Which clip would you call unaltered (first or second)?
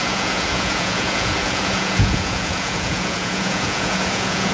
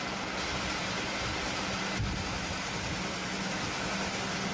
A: second